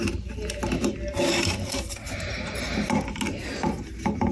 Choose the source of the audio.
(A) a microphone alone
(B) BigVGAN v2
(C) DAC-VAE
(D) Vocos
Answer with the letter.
A